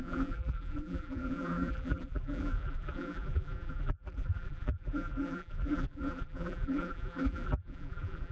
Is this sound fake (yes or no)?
yes